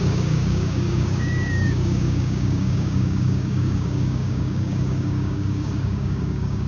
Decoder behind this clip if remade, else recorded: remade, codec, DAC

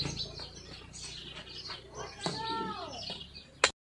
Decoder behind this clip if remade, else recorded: recorded